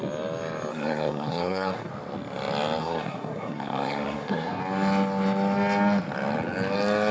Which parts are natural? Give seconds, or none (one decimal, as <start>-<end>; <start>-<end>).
0.0-0.7; 1.9-2.8; 4.6-7.1